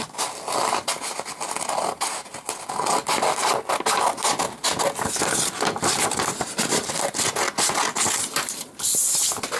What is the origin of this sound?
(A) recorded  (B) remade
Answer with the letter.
A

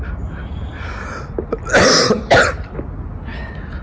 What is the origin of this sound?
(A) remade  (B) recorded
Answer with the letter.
B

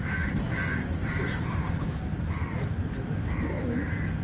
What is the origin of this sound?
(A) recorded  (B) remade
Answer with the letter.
A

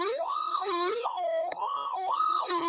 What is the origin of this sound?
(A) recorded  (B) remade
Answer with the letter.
B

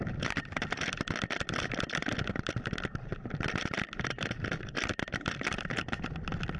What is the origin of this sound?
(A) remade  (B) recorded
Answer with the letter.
B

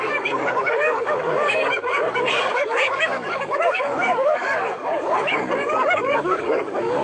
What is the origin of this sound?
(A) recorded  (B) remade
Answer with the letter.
B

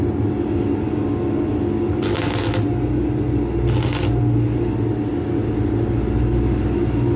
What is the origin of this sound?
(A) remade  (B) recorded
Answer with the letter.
B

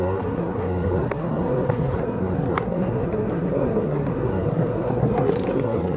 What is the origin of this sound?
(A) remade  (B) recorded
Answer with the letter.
A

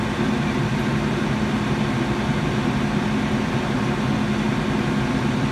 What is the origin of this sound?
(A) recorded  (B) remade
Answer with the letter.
A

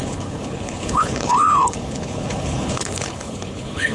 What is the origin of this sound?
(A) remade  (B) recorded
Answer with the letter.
A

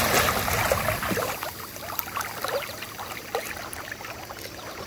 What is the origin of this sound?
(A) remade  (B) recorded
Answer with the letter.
B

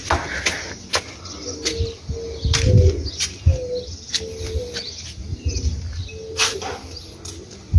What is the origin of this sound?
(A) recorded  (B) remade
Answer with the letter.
A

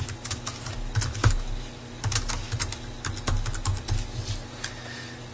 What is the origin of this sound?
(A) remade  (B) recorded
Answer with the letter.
B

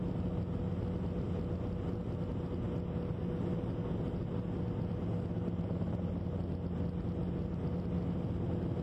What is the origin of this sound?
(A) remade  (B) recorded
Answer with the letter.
B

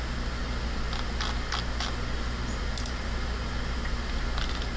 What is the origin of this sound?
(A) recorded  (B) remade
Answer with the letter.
A